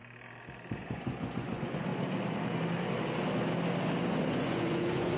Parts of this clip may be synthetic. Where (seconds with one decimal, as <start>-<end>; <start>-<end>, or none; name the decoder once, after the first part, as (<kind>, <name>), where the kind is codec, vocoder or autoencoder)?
0.7-1.9 (vocoder, Vocos); 4.1-5.2